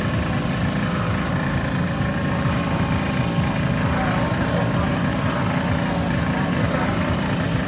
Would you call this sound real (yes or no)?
yes